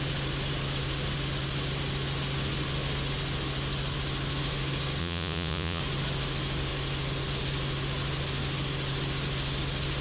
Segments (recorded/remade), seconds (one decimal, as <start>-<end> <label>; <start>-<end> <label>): 0.0-5.0 recorded; 5.0-5.8 remade; 5.8-10.0 recorded